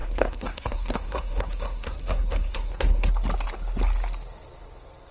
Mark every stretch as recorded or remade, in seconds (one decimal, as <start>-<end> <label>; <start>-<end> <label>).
0.0-3.1 remade; 3.1-5.1 recorded